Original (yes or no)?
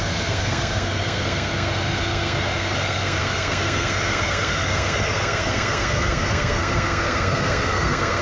no